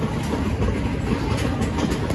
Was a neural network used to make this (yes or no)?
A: no